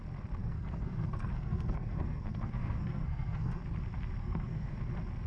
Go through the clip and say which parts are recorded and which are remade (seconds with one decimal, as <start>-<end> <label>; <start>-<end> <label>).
0.0-0.4 recorded; 0.4-3.6 remade; 3.6-4.2 recorded; 4.2-4.8 remade; 4.8-5.3 recorded